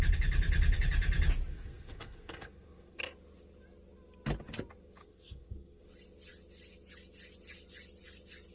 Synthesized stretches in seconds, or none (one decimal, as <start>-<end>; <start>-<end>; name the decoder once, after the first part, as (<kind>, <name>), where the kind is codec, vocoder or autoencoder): 1.5-3.0 (codec, SNAC); 5.0-5.8